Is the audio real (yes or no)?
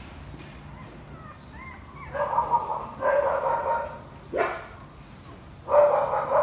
yes